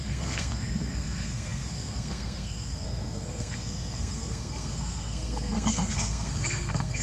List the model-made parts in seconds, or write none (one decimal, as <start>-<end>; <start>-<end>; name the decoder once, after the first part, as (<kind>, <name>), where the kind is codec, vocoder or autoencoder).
0.0-7.0 (codec, SNAC)

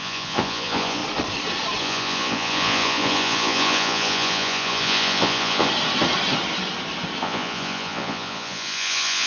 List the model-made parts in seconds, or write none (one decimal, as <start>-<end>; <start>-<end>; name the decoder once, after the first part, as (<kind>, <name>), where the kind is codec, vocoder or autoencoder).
0.0-1.0 (vocoder, Vocos); 1.8-5.7; 7.2-9.3

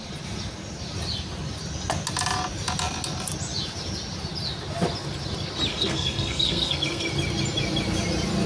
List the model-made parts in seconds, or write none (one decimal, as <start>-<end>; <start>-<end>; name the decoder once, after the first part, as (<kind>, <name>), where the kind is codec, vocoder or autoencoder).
5.7-7.1 (codec, SNAC)

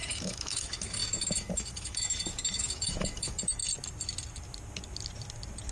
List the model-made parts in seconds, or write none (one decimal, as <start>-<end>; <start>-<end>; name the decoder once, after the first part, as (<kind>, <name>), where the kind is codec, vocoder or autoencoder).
0.0-3.6 (autoencoder, DAC-VAE)